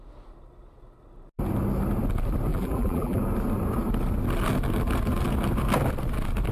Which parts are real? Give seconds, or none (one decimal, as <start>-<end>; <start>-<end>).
0.0-2.5; 3.2-6.5